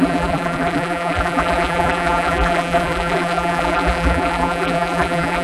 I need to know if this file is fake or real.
fake